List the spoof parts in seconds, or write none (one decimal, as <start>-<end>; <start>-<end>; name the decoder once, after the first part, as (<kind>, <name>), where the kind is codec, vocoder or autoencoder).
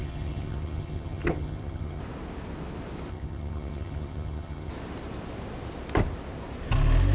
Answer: 0.0-2.0 (vocoder, HiFi-GAN); 3.1-4.7